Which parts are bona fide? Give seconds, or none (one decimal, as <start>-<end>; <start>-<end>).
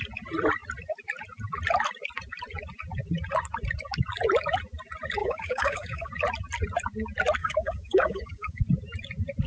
0.0-5.2; 6.1-7.4; 8.6-9.5